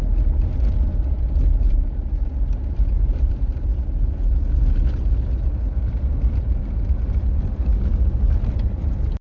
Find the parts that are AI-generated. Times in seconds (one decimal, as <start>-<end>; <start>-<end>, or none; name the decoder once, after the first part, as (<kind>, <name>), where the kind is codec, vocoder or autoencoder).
0.0-3.7 (vocoder, BigVGAN v2); 5.9-7.7; 8.5-9.2